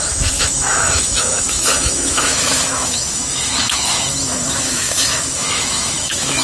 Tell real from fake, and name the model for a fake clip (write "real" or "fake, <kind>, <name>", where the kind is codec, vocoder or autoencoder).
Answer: fake, autoencoder, DAC-VAE